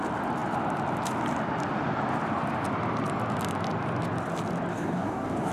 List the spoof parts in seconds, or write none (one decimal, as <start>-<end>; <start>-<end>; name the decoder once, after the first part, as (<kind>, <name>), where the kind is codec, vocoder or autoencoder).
4.7-5.5 (codec, DAC)